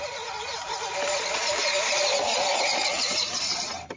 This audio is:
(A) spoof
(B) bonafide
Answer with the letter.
B